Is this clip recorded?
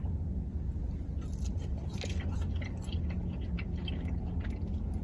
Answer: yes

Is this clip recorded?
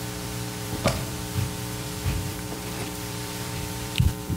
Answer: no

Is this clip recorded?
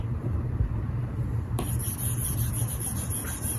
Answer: no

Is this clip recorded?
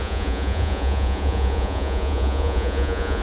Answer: no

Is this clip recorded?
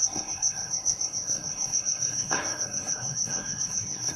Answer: no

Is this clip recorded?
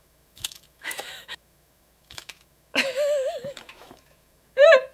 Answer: no